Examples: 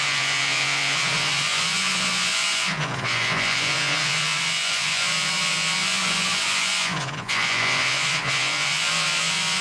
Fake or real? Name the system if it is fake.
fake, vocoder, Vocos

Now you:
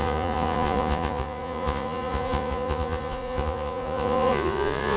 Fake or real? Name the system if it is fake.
fake, vocoder, Vocos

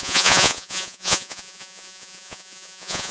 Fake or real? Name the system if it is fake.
fake, vocoder, Vocos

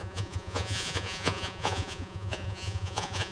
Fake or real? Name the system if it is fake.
fake, vocoder, Vocos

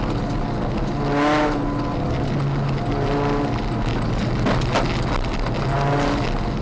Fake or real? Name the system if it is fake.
real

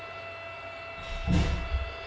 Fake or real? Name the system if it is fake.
real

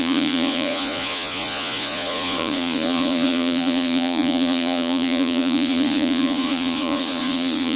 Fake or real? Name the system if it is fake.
fake, vocoder, Vocos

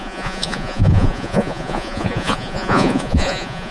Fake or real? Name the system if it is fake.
fake, vocoder, Vocos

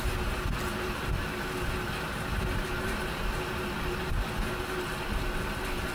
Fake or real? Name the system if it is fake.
real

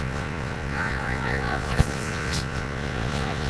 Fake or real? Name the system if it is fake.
fake, vocoder, Vocos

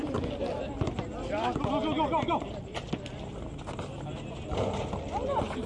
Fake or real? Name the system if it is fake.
real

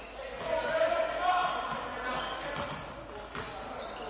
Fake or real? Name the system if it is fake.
real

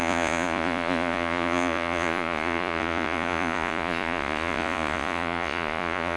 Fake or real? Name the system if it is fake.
fake, vocoder, Vocos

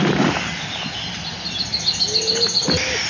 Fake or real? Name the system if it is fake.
real